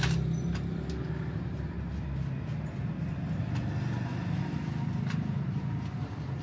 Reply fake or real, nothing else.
real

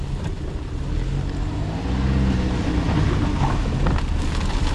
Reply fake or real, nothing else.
real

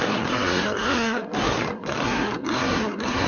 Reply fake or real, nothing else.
fake